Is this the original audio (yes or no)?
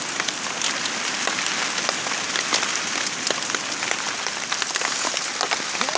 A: yes